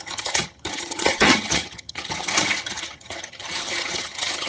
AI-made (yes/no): yes